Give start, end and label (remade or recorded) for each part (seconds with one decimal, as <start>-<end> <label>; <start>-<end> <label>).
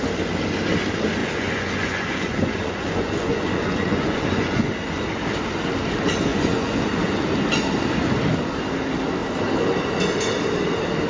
0.0-1.2 recorded; 1.2-4.7 remade; 4.7-6.3 recorded; 6.3-6.8 remade; 6.8-11.1 recorded